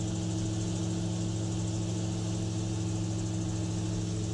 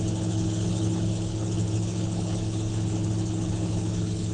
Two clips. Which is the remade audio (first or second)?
second